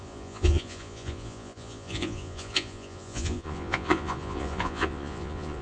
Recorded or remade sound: remade